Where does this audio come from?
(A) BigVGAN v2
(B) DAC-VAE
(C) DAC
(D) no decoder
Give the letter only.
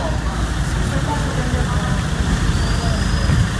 D